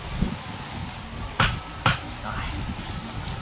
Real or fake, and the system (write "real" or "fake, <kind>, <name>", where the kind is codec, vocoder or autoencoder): real